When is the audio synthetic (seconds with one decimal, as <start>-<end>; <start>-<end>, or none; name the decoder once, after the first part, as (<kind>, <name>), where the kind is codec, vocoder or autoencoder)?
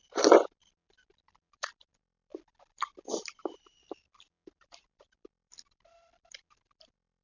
0.0-7.2 (vocoder, BigVGAN v2)